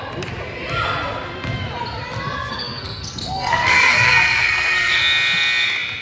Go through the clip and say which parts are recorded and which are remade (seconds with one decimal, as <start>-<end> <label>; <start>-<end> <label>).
0.0-2.5 recorded; 2.5-5.0 remade; 5.0-6.0 recorded